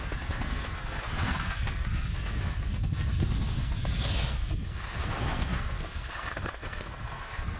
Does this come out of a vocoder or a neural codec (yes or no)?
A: yes